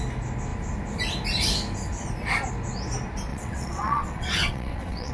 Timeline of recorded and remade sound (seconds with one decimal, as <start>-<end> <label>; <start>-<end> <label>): 0.0-3.3 recorded; 3.3-5.1 remade